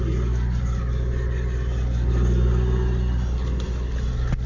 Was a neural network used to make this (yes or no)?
no